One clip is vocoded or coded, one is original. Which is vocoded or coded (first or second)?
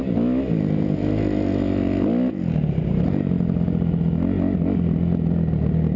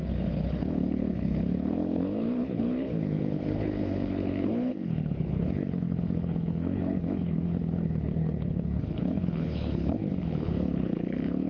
second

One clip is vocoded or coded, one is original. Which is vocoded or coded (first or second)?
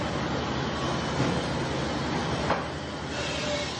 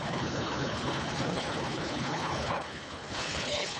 second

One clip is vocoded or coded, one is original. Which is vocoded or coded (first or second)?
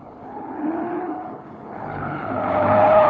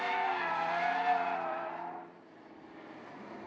first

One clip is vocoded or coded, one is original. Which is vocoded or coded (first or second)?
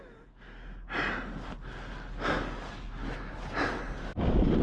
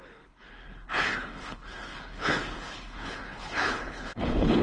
second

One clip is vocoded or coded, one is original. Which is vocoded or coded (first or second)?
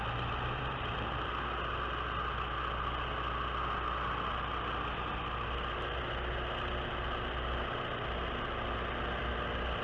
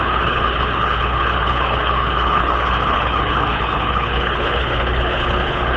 second